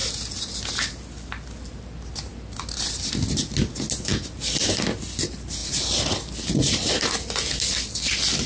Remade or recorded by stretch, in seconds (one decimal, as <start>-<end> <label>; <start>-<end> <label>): 0.0-8.5 recorded